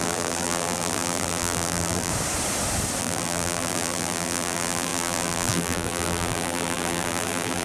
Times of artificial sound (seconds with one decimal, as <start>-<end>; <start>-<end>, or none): 0.0-2.1; 3.0-7.6